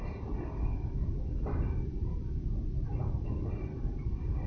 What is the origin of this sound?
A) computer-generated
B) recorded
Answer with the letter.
B